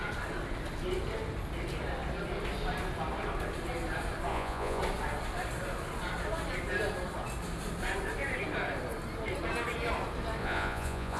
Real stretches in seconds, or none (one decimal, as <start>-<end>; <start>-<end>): 0.0-4.3; 4.8-10.4